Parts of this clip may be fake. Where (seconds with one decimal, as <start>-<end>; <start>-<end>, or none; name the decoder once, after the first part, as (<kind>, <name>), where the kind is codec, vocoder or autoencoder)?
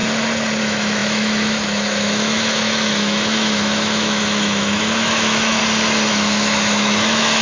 0.6-5.6 (autoencoder, DAC-VAE); 6.1-7.4